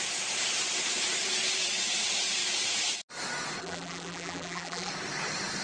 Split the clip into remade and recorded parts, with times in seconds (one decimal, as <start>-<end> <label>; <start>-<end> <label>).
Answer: 0.0-3.6 recorded; 3.6-4.9 remade; 4.9-5.6 recorded